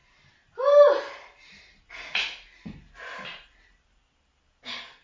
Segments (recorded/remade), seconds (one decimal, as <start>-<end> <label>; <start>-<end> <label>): 0.0-1.9 remade; 1.9-5.0 recorded